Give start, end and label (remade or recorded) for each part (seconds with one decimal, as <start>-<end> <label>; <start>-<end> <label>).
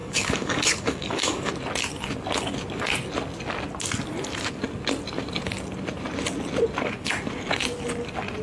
0.0-1.5 remade; 1.5-8.4 recorded